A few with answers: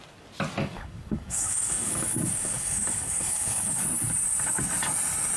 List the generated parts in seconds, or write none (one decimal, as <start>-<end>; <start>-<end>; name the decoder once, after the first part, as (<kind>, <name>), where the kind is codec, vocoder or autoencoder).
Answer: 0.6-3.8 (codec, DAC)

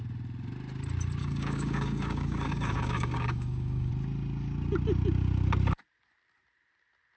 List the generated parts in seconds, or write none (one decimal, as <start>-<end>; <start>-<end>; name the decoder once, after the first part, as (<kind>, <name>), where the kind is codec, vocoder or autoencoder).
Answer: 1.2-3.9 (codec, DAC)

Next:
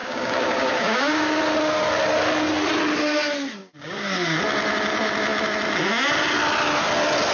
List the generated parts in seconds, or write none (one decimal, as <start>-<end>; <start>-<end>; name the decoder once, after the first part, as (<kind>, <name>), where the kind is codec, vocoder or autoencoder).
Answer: 0.0-1.4 (codec, DAC); 3.6-4.4

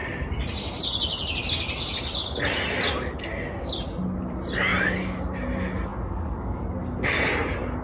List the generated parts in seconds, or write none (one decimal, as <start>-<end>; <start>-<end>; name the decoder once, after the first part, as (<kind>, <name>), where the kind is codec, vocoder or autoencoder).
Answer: 5.9-6.6 (codec, DAC)